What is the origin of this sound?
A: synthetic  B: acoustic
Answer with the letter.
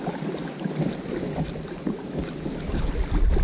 B